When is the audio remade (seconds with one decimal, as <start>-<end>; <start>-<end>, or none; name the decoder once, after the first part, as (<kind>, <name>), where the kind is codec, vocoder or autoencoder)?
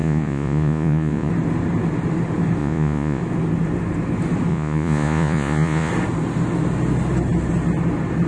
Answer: 0.0-1.3 (vocoder, Vocos); 2.6-3.2; 4.5-5.9